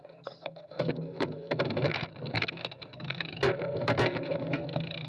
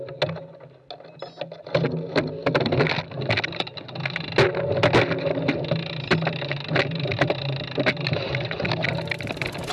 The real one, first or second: second